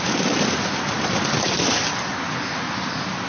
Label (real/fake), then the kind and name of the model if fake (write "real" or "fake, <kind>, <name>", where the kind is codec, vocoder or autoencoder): real